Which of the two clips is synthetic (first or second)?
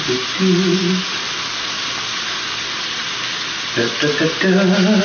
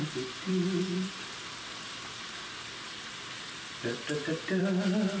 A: second